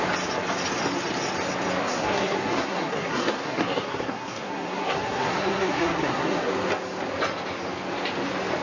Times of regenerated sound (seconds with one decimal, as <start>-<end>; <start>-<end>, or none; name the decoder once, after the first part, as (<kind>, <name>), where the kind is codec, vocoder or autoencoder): 1.8-6.5 (codec, SNAC)